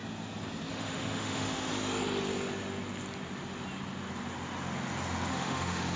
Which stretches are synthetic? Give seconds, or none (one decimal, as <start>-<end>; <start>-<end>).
0.7-1.7; 5.3-6.0